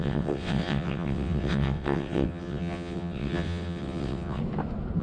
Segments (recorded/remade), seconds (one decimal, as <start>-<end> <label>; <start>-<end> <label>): 0.0-4.4 remade; 4.4-5.0 recorded